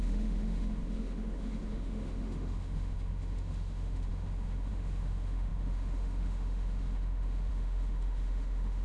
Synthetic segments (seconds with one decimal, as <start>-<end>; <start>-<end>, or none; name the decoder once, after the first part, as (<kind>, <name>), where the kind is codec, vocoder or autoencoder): 0.0-8.8 (autoencoder, DAC-VAE)